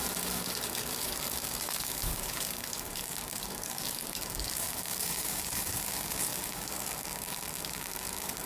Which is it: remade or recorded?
remade